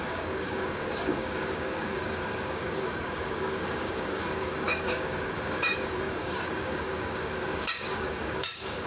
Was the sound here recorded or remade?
remade